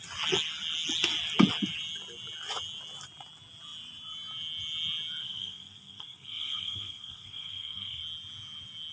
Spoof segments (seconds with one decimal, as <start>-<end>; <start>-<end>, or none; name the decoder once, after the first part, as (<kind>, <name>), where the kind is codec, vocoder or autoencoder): 5.2-8.0 (codec, SNAC)